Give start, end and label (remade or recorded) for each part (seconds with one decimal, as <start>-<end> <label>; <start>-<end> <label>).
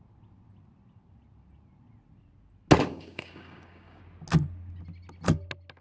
0.0-2.9 recorded; 2.9-4.0 remade; 4.0-5.8 recorded